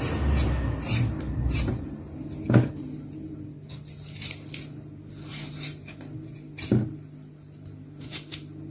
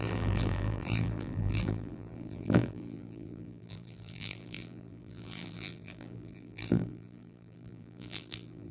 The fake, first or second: second